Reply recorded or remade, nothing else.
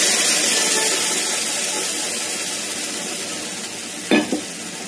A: recorded